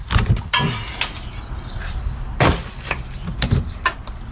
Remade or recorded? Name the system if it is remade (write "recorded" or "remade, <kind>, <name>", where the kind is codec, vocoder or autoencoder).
recorded